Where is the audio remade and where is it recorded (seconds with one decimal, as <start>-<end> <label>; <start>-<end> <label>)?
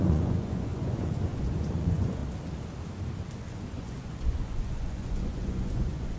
0.0-2.2 remade; 2.2-3.5 recorded; 3.5-6.2 remade